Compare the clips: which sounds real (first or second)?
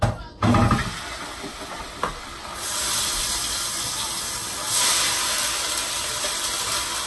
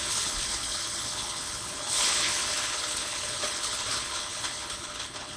first